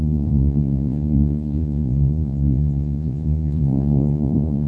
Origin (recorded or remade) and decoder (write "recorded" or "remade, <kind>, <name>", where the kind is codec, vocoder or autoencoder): remade, vocoder, Vocos